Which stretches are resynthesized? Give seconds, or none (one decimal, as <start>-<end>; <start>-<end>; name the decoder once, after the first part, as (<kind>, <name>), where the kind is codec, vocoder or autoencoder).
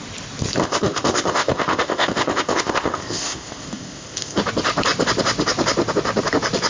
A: 0.6-4.4 (codec, ZipCodec)